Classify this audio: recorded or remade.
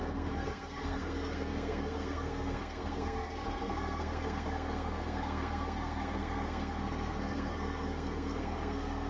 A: remade